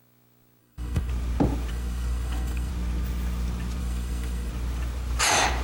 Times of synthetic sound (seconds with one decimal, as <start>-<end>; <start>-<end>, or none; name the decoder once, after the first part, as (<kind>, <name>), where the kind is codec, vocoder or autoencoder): 0.6-1.1 (codec, SNAC); 1.7-2.7; 3.8-4.5